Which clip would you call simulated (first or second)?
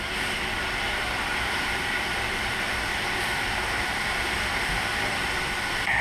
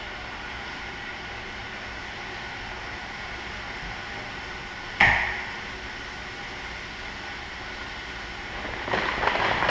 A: first